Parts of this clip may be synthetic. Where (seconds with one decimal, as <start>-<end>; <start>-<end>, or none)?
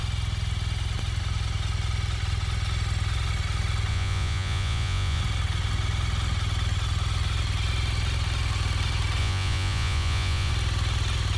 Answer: 3.9-5.2; 9.2-10.5